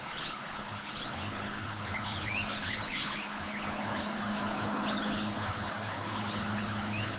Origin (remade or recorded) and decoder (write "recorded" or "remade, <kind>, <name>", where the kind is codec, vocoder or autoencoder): remade, codec, HILCodec